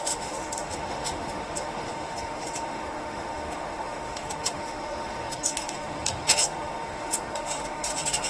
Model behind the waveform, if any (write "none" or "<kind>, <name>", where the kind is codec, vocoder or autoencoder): autoencoder, DAC-VAE